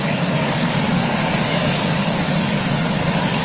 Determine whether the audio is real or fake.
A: fake